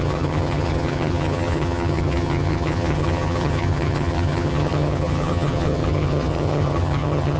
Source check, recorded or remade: remade